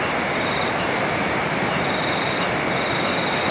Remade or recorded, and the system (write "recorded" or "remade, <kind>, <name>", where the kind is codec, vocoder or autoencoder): remade, vocoder, BigVGAN v2